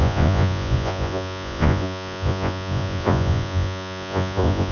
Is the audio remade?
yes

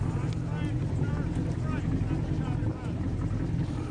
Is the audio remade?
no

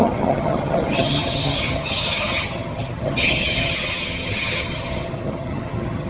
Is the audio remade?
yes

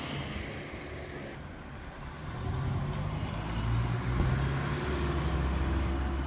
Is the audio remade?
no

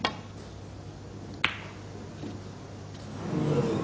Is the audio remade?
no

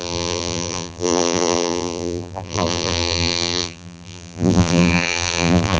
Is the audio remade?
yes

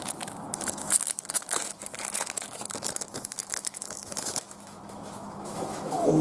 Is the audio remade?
yes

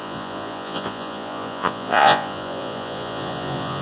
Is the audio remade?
yes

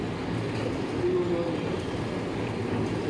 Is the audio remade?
no